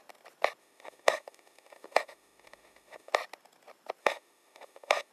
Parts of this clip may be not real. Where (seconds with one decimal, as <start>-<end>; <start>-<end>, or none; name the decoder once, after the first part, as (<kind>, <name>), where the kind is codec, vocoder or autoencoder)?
0.6-3.1 (autoencoder, DAC-VAE); 4.0-5.1